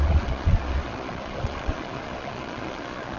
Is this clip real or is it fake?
fake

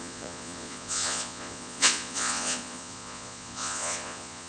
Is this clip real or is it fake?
fake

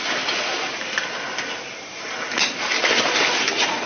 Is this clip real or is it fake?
real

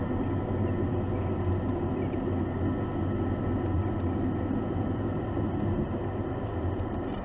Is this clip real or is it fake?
real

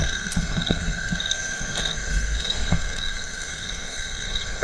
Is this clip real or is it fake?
fake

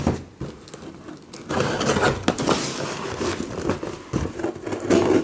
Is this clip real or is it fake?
real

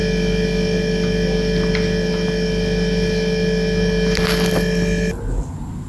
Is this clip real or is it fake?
real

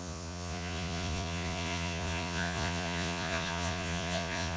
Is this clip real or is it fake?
fake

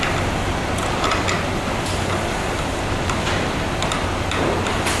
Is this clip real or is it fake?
real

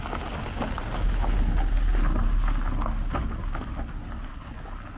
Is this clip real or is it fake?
real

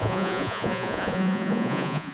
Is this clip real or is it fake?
fake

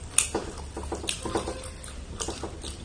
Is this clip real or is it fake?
real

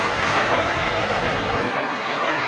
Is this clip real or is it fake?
fake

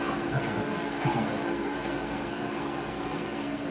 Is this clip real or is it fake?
fake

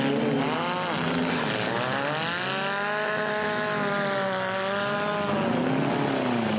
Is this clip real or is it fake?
real